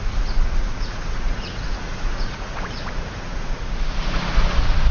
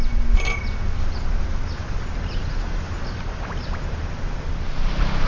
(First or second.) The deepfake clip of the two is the first